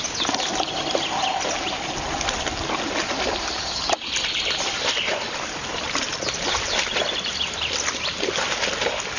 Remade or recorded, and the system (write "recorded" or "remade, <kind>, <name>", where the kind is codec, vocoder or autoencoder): recorded